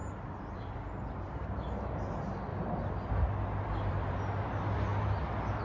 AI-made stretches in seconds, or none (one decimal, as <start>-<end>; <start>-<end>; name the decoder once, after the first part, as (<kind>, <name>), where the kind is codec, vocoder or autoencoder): 2.5-4.1 (vocoder, BigVGAN v2)